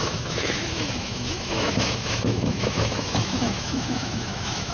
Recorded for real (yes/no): no